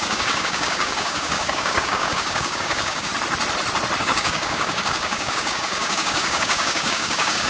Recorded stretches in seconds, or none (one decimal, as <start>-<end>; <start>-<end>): 3.1-4.0